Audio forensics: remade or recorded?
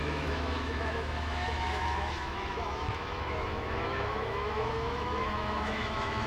remade